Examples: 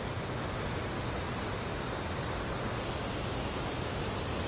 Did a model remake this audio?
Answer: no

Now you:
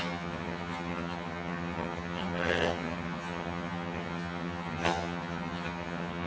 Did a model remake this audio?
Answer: yes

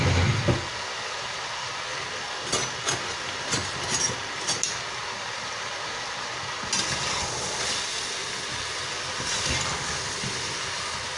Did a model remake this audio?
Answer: no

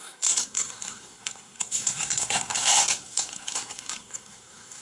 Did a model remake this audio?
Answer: yes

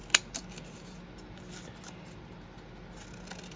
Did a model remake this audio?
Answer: no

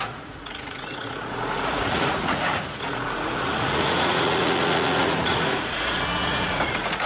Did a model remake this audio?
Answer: yes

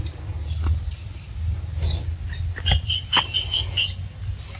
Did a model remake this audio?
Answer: no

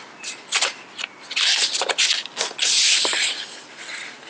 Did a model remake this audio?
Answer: no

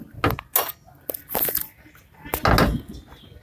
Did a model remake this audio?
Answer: no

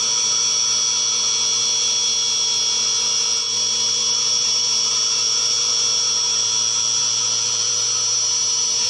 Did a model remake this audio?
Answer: no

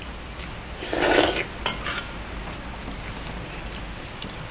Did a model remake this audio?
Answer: no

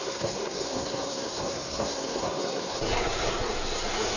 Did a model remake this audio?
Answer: yes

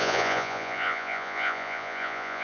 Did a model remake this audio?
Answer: yes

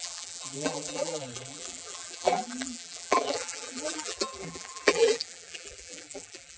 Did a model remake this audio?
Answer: yes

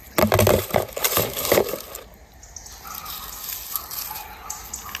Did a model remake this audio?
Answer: no